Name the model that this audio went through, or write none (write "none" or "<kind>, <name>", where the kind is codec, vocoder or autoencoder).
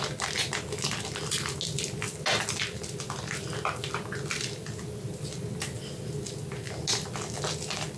none